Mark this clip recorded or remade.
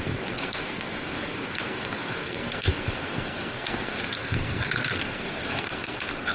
remade